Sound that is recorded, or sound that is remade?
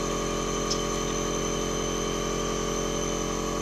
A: recorded